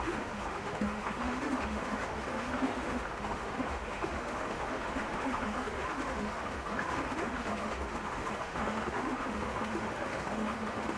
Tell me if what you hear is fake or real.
fake